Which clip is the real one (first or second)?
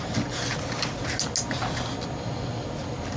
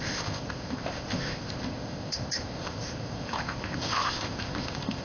first